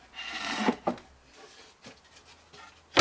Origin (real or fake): real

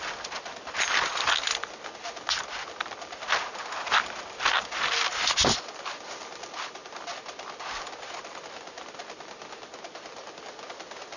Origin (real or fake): real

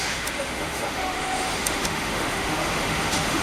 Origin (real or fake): fake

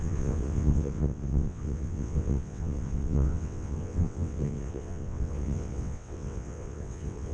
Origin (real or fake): fake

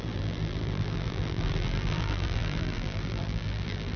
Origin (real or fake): fake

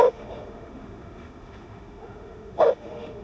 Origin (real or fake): fake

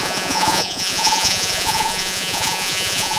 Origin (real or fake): fake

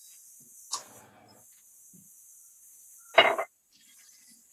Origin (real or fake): real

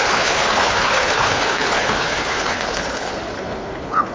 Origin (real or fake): fake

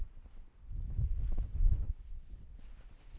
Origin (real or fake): real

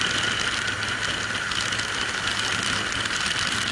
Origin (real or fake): real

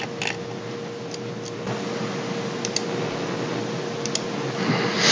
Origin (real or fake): real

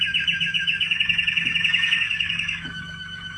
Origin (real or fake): fake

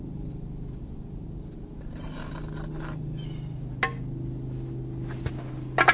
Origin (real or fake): real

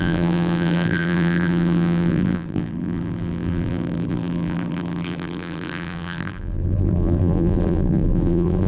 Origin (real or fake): fake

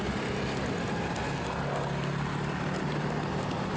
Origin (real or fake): real